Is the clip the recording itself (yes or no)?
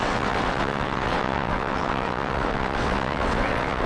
no